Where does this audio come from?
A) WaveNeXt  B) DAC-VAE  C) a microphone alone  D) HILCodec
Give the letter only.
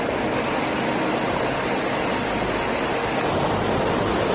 C